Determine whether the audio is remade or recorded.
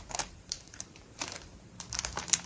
remade